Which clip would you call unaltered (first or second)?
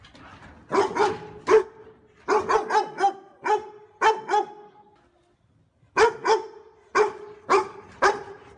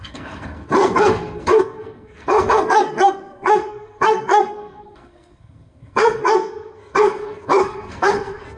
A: first